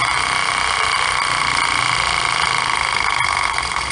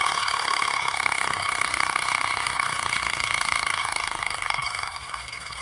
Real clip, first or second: first